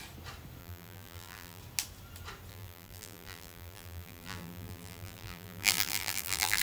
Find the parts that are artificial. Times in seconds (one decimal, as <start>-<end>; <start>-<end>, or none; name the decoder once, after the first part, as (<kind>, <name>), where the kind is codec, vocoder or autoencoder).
0.6-1.6 (vocoder, BigVGAN v2); 2.5-6.6

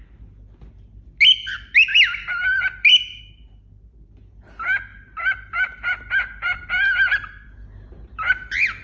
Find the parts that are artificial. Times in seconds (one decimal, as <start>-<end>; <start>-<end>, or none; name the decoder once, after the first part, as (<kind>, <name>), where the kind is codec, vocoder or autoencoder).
1.9-3.2 (vocoder, BigVGAN v2); 4.9-8.3

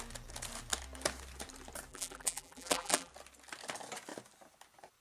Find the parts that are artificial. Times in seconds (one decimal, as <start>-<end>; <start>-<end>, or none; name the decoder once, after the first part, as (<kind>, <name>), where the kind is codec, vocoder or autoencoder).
1.9-3.1 (vocoder, BigVGAN v2)

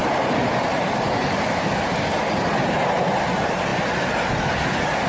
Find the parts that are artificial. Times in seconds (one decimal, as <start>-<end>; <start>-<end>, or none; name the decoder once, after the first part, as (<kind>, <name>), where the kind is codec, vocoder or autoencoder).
0.0-0.7 (vocoder, BigVGAN v2)

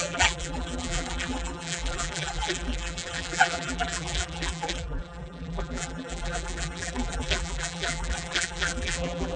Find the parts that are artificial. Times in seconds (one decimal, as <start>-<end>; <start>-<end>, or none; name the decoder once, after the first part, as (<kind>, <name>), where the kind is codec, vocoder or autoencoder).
0.0-9.4 (vocoder, BigVGAN v2)